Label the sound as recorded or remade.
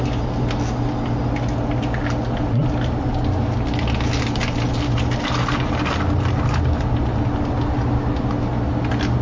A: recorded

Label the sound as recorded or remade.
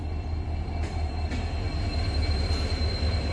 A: recorded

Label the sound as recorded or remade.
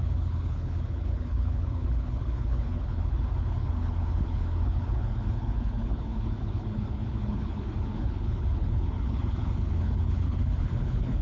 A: remade